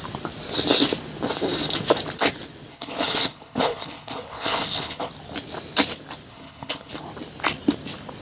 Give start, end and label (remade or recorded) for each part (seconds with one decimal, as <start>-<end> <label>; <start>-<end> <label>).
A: 0.0-2.7 recorded; 2.7-5.1 remade; 5.1-6.3 recorded; 6.3-6.9 remade; 6.9-8.2 recorded